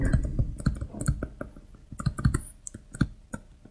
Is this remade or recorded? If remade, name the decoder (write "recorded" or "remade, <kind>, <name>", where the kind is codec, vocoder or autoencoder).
recorded